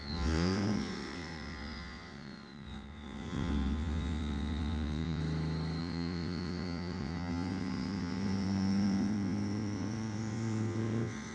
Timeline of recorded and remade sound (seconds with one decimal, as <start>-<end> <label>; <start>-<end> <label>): 0.0-5.2 remade; 5.2-5.8 recorded; 5.8-11.3 remade